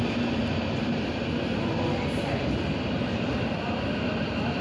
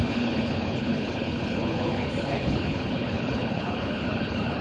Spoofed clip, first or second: second